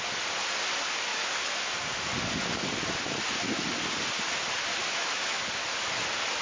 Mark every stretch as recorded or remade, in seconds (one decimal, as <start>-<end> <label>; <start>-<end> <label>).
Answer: 0.0-1.1 recorded; 1.1-1.7 remade; 1.7-4.8 recorded; 4.8-5.4 remade; 5.4-6.4 recorded